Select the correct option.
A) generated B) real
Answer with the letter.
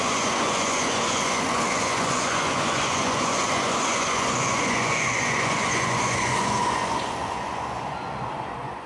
A